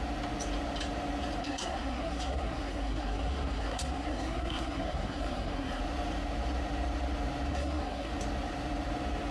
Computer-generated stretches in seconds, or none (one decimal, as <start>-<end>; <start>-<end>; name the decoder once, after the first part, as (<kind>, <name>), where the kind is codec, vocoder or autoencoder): 1.4-5.8 (codec, SNAC); 7.5-8.1